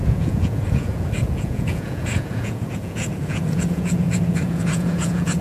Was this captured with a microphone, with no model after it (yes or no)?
no